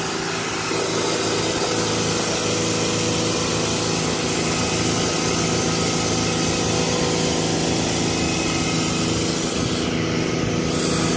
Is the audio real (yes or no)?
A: yes